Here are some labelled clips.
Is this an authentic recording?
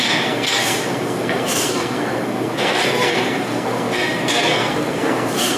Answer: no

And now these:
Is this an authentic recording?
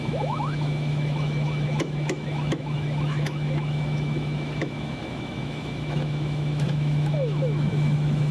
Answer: no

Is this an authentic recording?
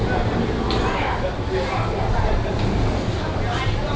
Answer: yes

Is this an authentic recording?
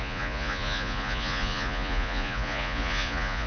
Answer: no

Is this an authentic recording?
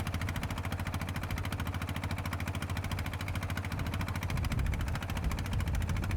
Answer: yes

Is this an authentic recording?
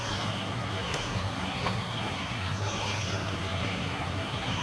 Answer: no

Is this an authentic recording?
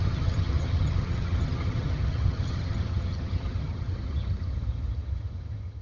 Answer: no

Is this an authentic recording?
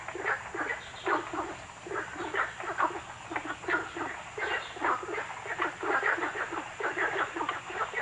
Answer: yes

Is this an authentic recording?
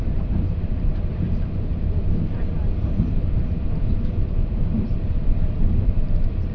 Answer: no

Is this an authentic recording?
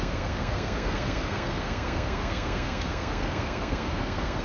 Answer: no